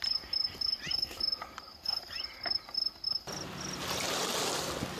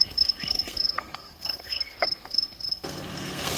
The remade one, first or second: second